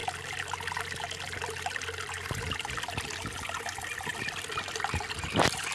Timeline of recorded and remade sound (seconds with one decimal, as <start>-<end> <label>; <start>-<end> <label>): 0.0-5.7 recorded